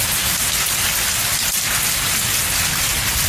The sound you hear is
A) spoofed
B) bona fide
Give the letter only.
B